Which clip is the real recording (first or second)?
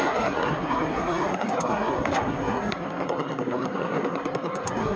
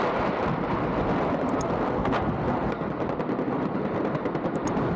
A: second